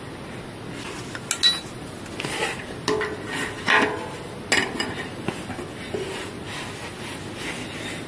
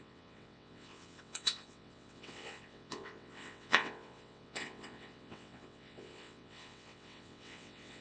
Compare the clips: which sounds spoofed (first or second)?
second